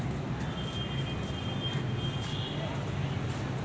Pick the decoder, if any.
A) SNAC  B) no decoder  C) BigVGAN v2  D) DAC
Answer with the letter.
B